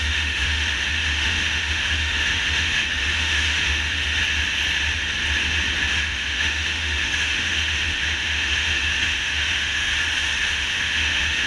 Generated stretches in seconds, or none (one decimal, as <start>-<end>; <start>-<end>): 0.0-4.2; 5.9-9.9; 10.5-11.5

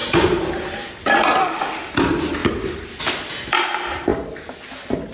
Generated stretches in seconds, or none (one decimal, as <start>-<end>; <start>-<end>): 1.4-1.9

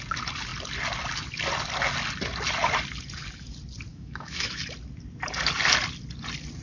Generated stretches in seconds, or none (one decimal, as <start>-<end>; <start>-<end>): 3.9-4.6

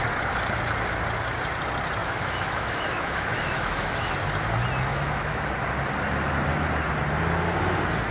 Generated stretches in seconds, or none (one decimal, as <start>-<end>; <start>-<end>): 2.0-4.1; 4.9-5.5

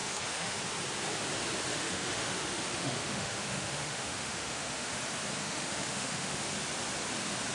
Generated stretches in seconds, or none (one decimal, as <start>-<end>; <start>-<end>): 0.0-0.6; 1.7-5.0; 5.4-6.5

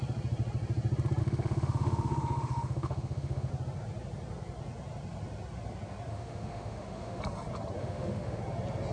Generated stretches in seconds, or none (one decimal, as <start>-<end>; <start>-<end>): 1.2-3.5; 6.1-7.2; 7.8-8.4

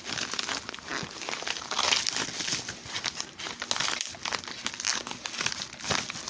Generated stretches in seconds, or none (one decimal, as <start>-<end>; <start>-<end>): none

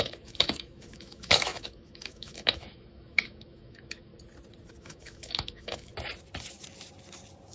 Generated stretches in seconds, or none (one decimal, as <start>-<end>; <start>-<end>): 0.0-4.1; 4.8-5.9